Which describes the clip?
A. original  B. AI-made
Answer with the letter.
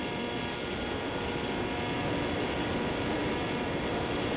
A